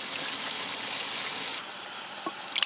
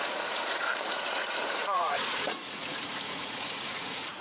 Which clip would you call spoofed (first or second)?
second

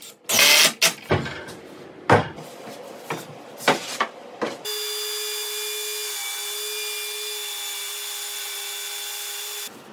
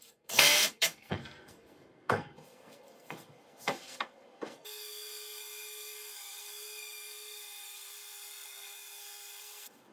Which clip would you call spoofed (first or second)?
second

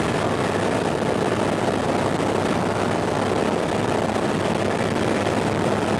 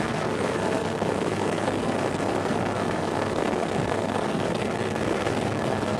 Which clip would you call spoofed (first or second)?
second